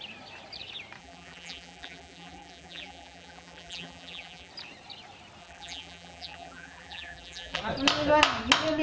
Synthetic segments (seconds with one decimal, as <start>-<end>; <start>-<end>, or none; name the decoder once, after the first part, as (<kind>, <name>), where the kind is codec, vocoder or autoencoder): 1.0-4.5 (vocoder, BigVGAN v2); 5.4-7.6